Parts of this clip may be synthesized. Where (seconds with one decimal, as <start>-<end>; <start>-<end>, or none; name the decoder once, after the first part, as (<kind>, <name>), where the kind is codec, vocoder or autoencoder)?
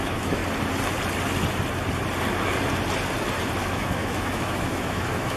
0.0-0.4 (autoencoder, DAC-VAE); 3.6-5.4